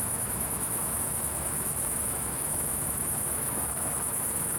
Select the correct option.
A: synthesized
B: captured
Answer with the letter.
A